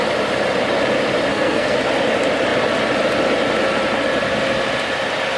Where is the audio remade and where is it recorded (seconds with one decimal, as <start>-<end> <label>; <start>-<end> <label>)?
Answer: 0.0-1.3 recorded; 1.3-1.8 remade; 1.8-5.4 recorded